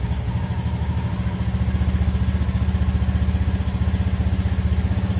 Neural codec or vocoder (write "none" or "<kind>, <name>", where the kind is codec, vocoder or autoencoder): none